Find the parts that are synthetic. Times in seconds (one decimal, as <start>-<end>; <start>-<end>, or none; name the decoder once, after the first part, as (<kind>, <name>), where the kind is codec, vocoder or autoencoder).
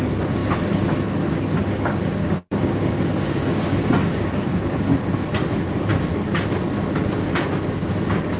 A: 2.2-4.9 (codec, DAC)